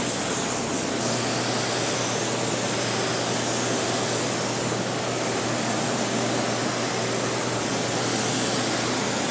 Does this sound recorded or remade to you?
recorded